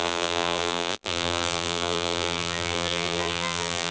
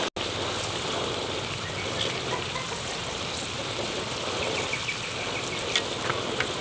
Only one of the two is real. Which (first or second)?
second